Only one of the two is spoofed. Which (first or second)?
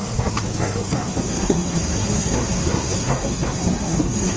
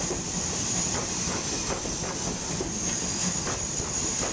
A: first